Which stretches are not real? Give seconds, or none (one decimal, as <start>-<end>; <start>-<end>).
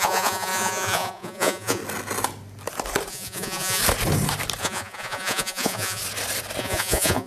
0.0-1.8; 3.1-3.8; 4.6-6.0; 6.6-7.3